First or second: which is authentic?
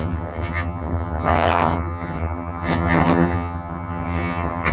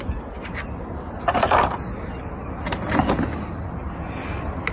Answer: second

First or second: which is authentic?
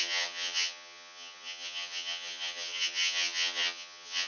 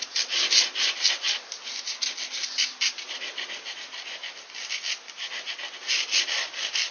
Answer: second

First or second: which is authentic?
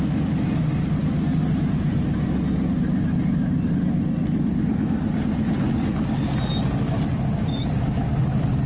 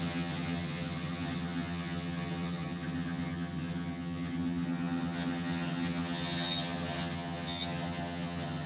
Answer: first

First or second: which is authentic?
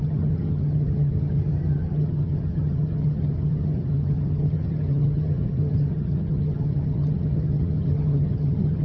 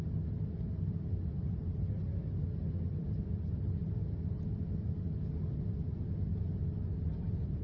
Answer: second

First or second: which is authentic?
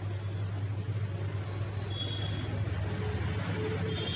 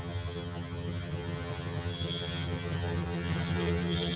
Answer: first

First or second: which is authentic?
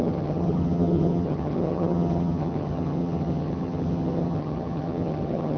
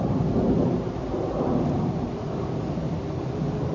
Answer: second